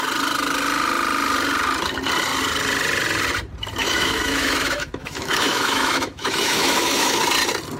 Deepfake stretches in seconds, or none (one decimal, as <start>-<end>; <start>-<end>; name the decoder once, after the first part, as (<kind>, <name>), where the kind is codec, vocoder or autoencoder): 3.8-7.2 (autoencoder, DAC-VAE)